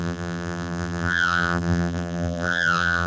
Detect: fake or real fake